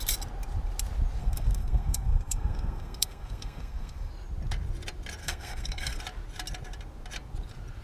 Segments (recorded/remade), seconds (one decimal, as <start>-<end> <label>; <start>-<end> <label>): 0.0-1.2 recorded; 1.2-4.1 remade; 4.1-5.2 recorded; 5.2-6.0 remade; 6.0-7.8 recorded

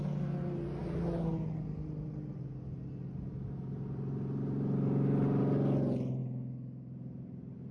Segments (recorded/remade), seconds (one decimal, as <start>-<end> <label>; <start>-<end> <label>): 0.0-7.7 recorded

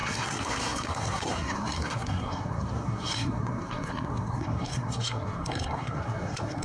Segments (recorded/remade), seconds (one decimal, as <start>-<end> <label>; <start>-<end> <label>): 0.0-6.6 remade